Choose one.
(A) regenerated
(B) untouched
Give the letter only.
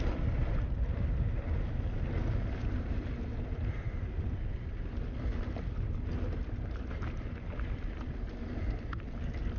B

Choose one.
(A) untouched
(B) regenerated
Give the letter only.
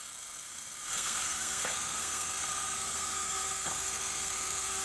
B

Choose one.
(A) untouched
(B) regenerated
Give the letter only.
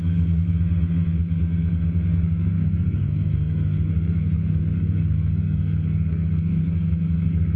B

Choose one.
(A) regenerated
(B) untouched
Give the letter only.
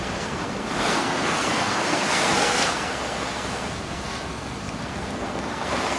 A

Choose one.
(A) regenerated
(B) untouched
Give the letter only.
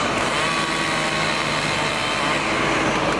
B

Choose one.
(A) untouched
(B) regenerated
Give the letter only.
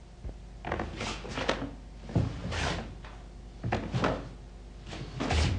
A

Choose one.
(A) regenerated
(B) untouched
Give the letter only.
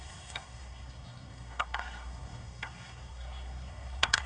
A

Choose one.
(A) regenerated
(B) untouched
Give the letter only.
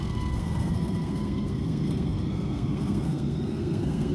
A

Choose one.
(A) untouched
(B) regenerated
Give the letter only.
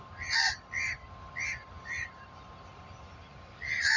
A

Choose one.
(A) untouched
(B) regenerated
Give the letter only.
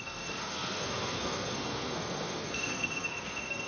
B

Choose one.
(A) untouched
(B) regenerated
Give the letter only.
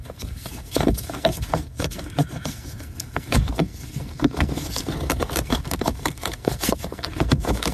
B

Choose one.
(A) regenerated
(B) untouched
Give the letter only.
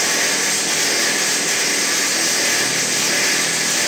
B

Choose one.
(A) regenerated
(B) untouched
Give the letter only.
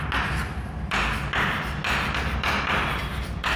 B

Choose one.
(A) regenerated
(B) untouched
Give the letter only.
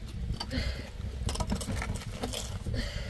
B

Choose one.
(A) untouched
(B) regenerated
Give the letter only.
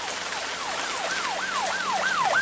A